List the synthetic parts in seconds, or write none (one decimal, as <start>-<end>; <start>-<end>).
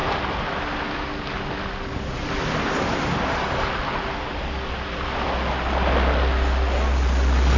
none